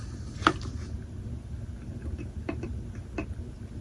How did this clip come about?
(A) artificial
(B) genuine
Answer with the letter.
B